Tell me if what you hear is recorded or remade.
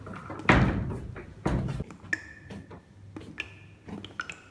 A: recorded